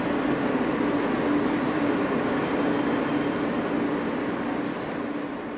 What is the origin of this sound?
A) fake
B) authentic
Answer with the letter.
B